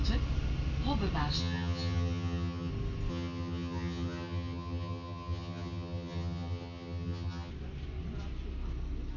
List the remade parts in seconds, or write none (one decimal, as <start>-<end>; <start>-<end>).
1.4-2.7; 3.1-7.5